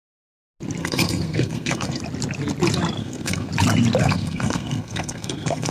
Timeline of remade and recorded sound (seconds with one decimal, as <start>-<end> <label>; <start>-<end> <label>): 0.0-0.8 recorded; 0.8-2.0 remade; 2.0-3.0 recorded; 3.0-3.5 remade; 3.5-4.0 recorded; 4.0-5.7 remade